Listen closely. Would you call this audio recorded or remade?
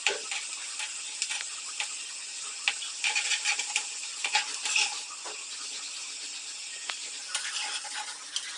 recorded